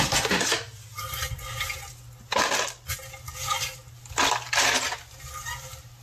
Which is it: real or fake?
real